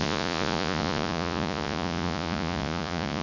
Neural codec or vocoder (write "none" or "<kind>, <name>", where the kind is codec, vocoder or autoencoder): vocoder, Vocos